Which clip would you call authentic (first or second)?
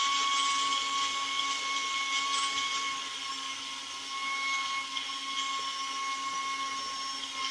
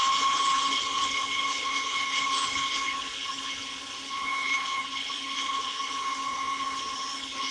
first